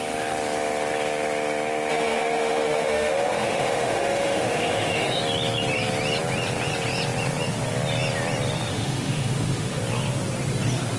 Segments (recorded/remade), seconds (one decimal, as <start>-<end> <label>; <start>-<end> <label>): 0.0-1.9 recorded; 1.9-5.2 remade; 5.2-8.7 recorded; 8.7-9.8 remade; 9.8-11.0 recorded